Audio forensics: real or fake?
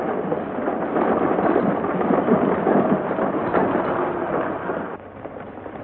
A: real